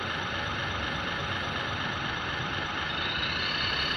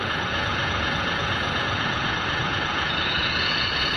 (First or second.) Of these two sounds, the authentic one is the first